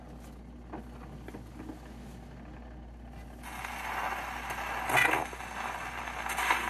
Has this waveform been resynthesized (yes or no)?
no